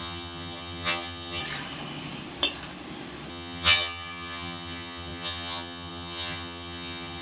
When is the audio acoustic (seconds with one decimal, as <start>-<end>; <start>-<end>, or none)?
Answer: 1.4-3.3